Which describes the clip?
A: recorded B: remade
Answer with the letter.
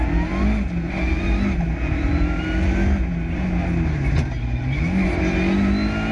A